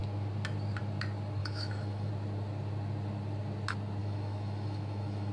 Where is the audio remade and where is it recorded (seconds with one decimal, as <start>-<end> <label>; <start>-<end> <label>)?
0.0-1.4 recorded; 1.4-2.1 remade; 2.1-4.0 recorded; 4.0-5.3 remade